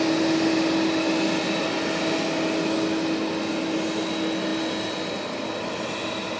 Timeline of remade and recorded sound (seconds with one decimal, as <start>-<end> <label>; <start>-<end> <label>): 0.0-6.4 recorded